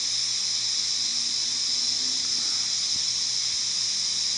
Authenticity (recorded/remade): recorded